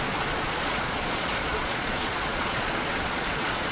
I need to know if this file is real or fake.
fake